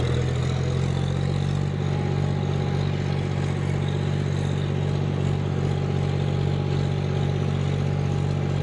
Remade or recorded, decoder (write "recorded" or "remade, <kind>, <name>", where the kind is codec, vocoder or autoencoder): recorded